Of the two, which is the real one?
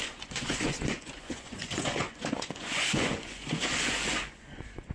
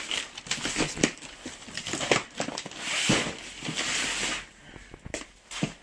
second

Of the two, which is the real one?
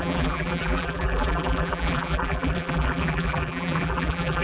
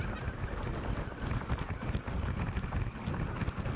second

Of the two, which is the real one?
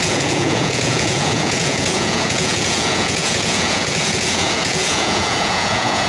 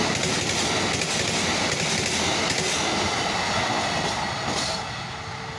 second